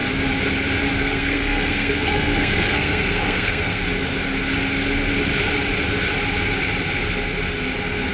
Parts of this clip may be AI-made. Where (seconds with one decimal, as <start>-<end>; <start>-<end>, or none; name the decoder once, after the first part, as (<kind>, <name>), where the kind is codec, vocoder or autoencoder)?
1.0-3.8 (codec, SNAC)